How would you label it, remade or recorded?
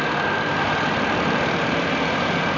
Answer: recorded